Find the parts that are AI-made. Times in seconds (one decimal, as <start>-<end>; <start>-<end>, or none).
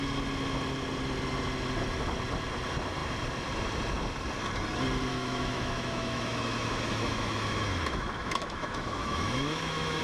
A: 5.1-10.0